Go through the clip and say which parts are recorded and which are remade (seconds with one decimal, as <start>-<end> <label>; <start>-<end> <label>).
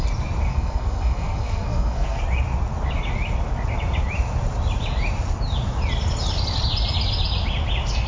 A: 0.0-0.5 recorded; 0.5-2.2 remade; 2.2-8.1 recorded